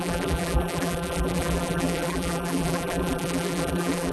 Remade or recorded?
remade